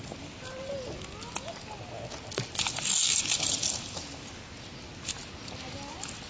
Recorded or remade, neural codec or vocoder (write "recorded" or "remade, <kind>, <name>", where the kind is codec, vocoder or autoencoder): recorded